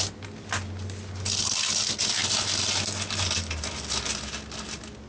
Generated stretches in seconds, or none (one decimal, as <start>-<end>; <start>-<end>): none